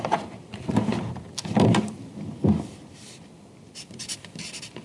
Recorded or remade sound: remade